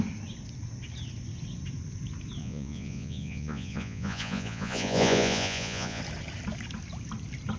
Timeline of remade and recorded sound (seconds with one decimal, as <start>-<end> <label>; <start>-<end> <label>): 0.0-2.4 recorded; 2.4-6.0 remade; 6.0-7.6 recorded